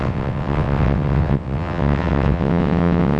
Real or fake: fake